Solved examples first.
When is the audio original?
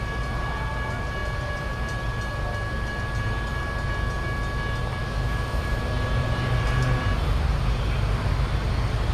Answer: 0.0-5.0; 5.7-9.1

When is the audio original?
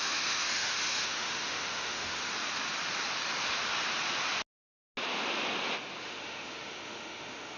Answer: 2.3-6.0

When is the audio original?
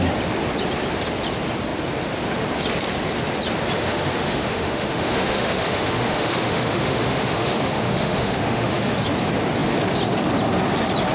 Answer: 0.0-3.8; 9.0-11.1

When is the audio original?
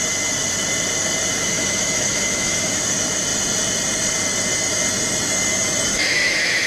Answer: 0.0-1.4; 2.8-5.9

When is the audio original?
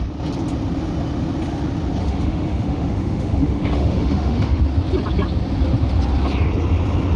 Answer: 0.0-2.0; 4.6-7.2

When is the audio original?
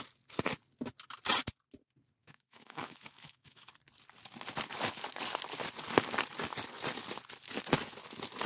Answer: 0.0-2.2; 3.7-8.5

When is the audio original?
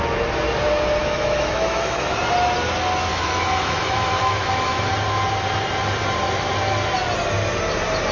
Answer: 0.0-1.0; 2.1-3.1; 4.9-8.1